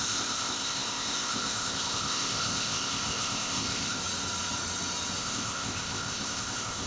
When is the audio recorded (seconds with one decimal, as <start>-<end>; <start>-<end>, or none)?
4.0-5.2